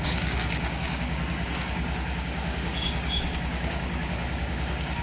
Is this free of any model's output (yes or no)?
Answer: no